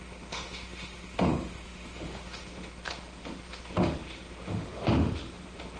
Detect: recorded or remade remade